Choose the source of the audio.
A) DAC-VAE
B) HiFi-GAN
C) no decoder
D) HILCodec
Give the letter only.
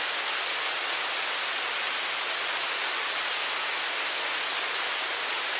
C